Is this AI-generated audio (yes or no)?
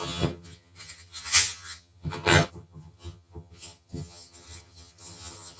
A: yes